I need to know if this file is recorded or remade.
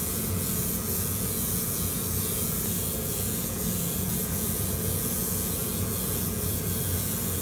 remade